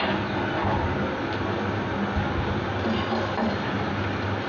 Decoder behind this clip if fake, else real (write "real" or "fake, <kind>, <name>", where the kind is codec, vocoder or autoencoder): real